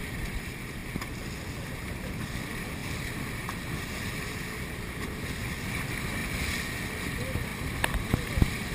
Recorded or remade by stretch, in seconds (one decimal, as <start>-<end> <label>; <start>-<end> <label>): 0.0-0.8 remade; 0.8-1.5 recorded; 1.5-2.8 remade; 2.8-5.6 recorded; 5.6-6.2 remade; 6.2-6.9 recorded; 6.9-8.7 remade